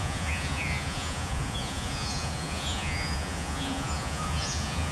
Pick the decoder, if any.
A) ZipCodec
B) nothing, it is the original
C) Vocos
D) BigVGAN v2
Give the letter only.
C